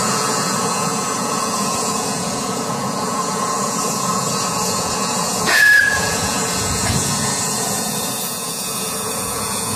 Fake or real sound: fake